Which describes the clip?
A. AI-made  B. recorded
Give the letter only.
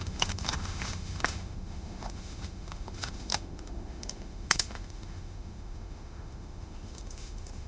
A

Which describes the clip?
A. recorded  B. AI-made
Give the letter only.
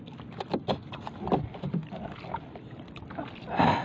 A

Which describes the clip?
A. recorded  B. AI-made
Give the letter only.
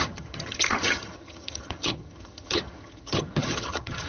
B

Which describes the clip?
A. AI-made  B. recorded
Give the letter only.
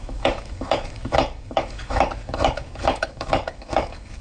A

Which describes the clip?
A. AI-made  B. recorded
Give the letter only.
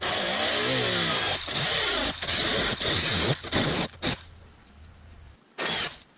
B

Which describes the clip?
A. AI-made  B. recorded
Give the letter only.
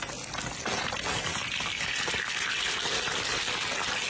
B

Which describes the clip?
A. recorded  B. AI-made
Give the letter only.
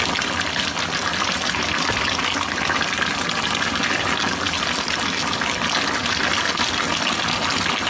A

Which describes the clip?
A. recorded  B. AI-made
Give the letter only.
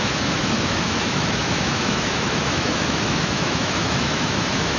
B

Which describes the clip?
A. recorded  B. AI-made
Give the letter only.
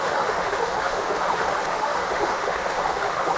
B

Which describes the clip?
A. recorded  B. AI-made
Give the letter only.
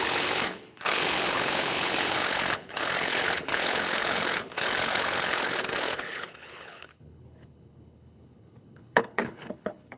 B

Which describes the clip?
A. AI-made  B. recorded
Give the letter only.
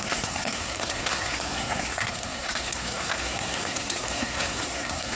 A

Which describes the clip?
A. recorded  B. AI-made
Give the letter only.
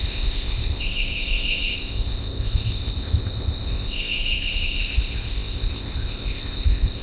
B